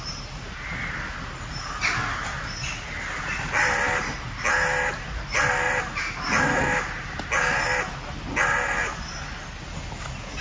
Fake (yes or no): no